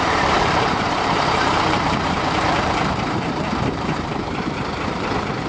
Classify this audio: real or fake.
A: fake